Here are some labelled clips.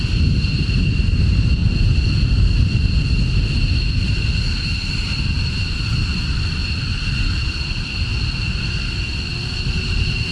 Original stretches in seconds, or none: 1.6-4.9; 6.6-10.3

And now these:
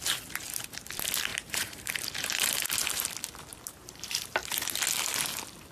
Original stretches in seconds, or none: 0.0-1.3; 2.5-3.5; 4.3-5.7

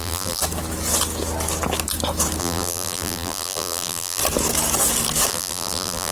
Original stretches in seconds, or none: 0.4-2.4; 4.2-5.3